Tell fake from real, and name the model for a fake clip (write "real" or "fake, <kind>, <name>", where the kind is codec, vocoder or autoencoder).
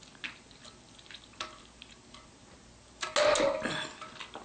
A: real